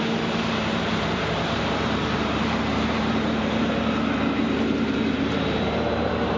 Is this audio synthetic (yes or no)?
yes